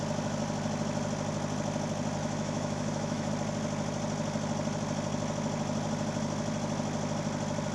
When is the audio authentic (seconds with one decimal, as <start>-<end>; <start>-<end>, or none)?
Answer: 0.0-2.2; 3.3-7.7